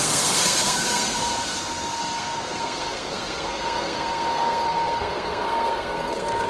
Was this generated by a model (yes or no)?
yes